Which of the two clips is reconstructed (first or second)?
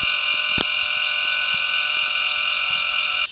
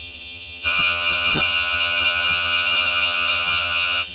second